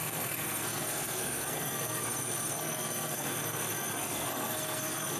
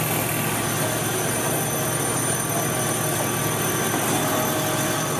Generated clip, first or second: first